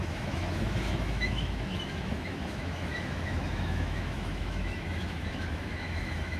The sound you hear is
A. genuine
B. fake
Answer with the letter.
B